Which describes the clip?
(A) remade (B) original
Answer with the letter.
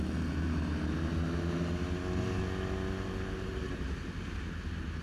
B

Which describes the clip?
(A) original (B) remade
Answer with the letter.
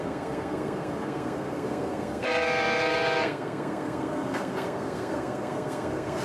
B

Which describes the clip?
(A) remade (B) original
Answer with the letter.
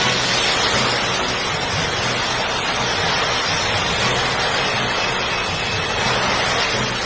B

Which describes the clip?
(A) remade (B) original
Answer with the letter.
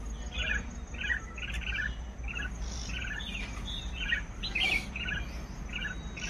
B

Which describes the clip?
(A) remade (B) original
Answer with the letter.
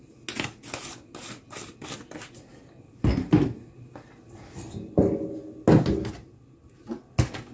B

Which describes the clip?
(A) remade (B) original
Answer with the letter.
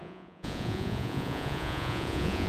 A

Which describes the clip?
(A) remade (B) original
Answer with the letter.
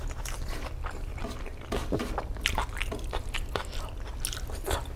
B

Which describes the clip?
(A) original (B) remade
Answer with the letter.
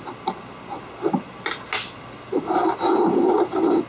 A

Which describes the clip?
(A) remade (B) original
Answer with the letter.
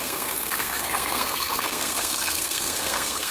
A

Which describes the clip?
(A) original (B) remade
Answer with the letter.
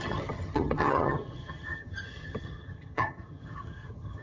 B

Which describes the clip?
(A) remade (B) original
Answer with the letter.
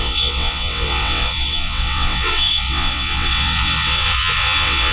A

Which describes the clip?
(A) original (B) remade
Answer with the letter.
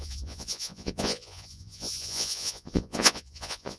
B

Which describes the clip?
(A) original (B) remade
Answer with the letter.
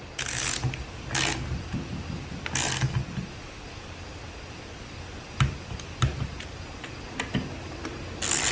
A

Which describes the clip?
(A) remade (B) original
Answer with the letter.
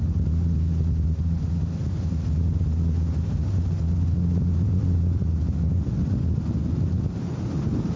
B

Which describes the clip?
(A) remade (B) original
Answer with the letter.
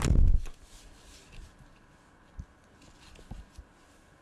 B